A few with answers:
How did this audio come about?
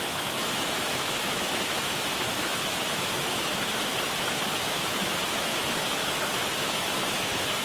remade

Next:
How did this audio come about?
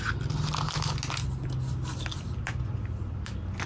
recorded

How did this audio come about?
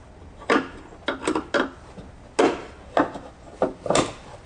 recorded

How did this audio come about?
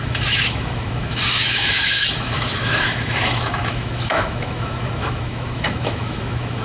remade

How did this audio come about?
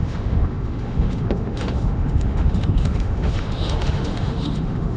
remade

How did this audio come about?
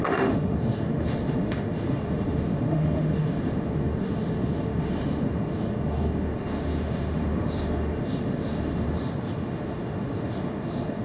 remade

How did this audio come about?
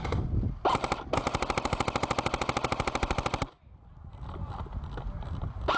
recorded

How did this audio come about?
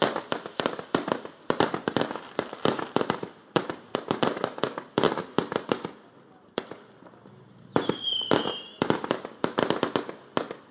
recorded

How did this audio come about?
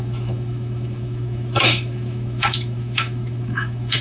remade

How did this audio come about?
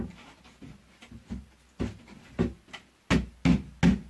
recorded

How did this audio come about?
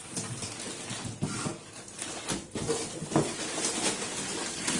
recorded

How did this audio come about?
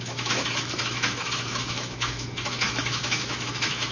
remade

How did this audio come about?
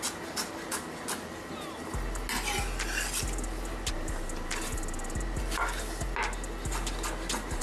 recorded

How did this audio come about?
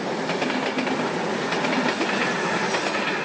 recorded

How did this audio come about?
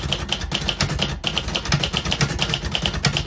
recorded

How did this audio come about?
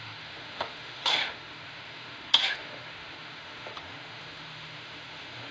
remade